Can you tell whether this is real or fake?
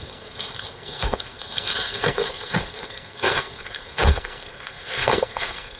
fake